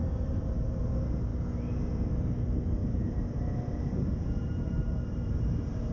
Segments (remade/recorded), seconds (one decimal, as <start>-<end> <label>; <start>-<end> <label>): 0.0-0.7 remade; 0.7-2.8 recorded; 2.8-5.9 remade